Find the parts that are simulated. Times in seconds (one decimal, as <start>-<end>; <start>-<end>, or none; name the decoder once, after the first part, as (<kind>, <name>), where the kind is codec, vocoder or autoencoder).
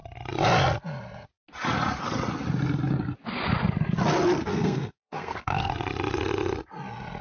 4.5-5.7 (codec, SNAC)